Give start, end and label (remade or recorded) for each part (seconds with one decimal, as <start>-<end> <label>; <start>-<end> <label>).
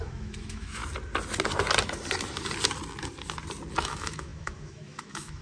0.0-0.8 remade; 0.8-3.8 recorded; 3.8-5.4 remade